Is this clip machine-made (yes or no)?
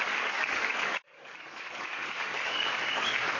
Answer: yes